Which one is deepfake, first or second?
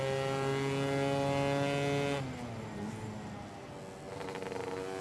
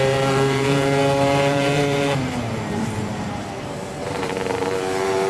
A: second